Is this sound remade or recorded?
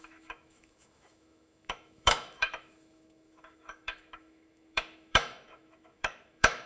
remade